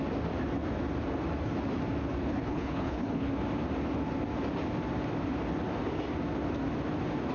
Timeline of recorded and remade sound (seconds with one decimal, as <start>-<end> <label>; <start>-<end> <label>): 0.0-2.2 recorded; 2.2-3.3 remade; 3.3-7.3 recorded

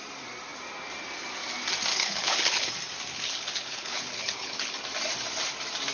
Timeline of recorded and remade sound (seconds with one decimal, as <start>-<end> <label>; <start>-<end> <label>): 0.0-1.9 recorded; 1.9-2.7 remade; 2.7-3.1 recorded; 3.1-4.7 remade; 4.7-5.9 recorded

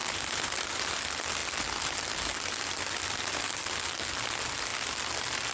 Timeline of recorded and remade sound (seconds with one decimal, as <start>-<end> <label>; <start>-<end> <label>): 0.0-0.8 remade; 0.8-5.5 recorded